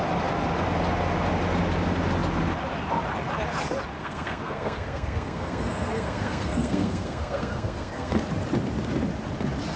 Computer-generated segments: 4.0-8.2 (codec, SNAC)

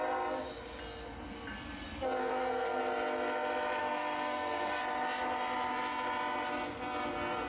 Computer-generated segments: 2.2-2.8 (codec, SNAC); 3.8-4.8

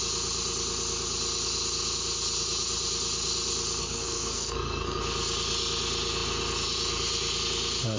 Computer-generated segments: 3.8-5.0 (codec, SNAC)

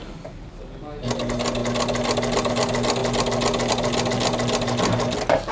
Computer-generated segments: none

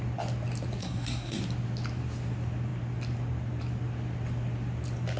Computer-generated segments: 0.8-1.4 (codec, SNAC)

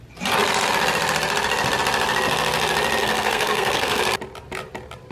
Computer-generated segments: 3.0-4.0 (codec, SNAC)

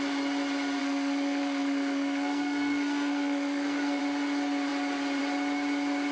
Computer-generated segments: 0.8-4.0 (codec, SNAC)